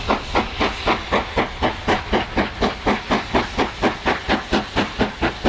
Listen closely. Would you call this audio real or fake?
real